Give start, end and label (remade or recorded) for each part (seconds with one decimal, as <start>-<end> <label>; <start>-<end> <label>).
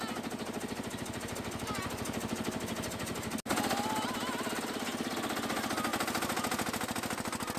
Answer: 0.0-7.6 recorded